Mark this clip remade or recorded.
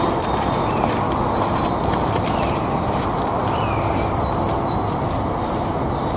recorded